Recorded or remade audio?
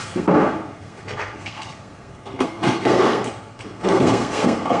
remade